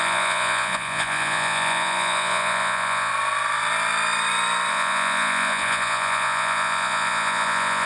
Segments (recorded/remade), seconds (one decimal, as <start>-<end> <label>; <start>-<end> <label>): 0.0-3.1 remade; 3.1-4.7 recorded; 4.7-7.9 remade